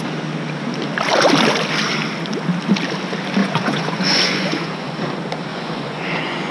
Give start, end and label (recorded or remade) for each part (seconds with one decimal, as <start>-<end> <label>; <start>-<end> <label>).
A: 0.0-3.4 recorded; 3.4-5.1 remade; 5.1-5.5 recorded; 5.5-6.5 remade